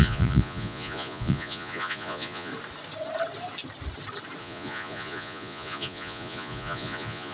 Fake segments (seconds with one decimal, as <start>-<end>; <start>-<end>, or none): 0.0-2.5; 4.4-7.3